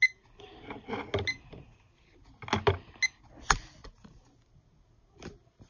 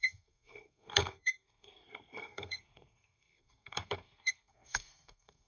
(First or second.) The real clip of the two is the first